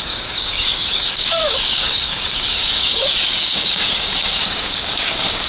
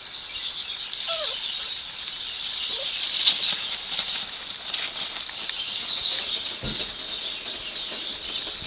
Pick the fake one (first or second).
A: first